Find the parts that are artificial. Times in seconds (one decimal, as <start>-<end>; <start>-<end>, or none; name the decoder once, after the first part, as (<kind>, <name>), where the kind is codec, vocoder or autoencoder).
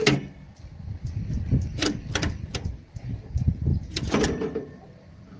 none